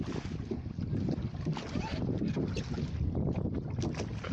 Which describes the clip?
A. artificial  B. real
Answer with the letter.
B